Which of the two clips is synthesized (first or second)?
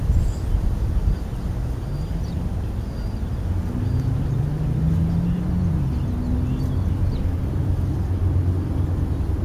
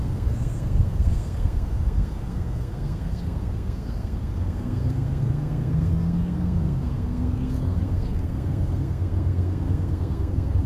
second